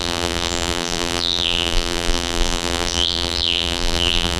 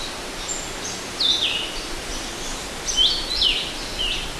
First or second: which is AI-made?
first